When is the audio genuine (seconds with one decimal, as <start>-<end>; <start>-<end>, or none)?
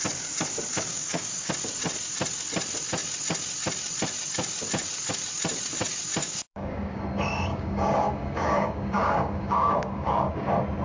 0.0-0.9; 1.5-6.2; 7.0-7.5; 10.3-10.8